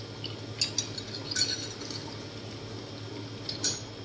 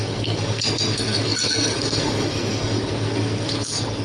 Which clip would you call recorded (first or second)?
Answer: first